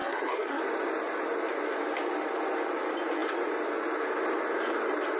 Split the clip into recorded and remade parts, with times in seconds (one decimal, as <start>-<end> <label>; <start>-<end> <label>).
0.0-0.6 remade; 0.6-5.2 recorded